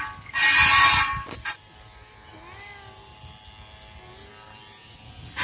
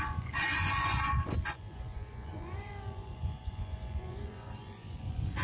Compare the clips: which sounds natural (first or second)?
first